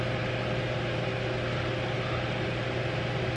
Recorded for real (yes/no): yes